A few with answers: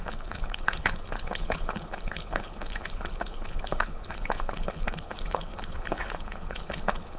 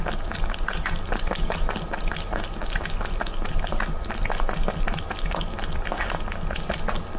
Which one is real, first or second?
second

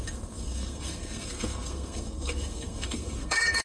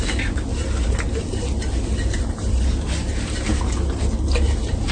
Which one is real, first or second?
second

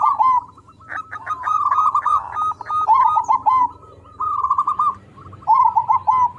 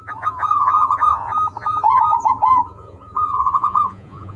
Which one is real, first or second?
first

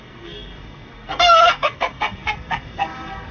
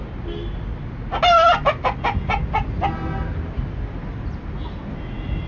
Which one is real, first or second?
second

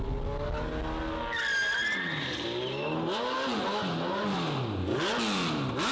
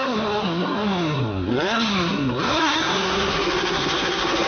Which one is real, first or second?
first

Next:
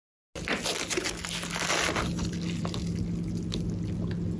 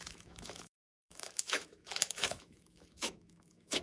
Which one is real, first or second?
first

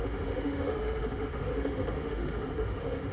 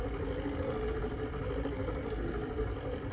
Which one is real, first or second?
second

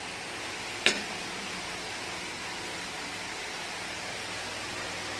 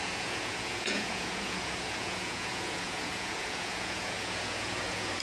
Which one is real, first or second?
first